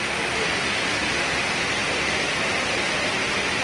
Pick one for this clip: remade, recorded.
recorded